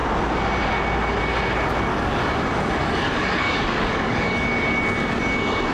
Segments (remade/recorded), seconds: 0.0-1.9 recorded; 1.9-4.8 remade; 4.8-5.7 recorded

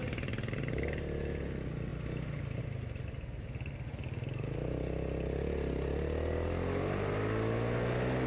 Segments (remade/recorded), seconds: 0.0-8.3 recorded

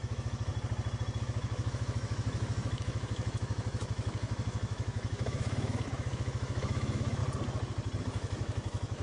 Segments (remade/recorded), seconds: 0.0-0.5 remade; 0.5-1.2 recorded; 1.2-7.2 remade; 7.2-8.0 recorded; 8.0-9.0 remade

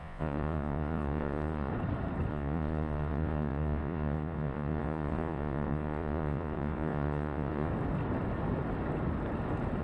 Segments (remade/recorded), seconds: 0.0-1.7 remade; 1.7-2.3 recorded; 2.3-7.7 remade; 7.7-9.8 recorded

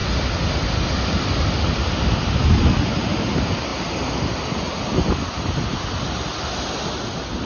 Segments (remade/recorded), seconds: 0.0-7.4 recorded

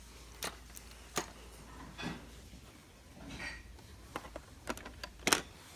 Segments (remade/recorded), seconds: 0.0-5.8 recorded

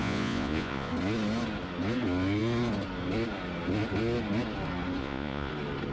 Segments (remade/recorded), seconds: 0.0-0.9 remade; 0.9-5.0 recorded; 5.0-5.5 remade; 5.5-5.9 recorded